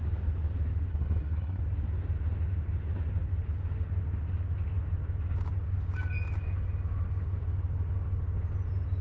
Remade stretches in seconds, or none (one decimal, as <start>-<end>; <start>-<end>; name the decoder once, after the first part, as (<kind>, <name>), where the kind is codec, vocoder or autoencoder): 0.9-1.6 (codec, SNAC)